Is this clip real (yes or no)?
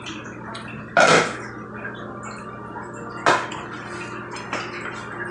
yes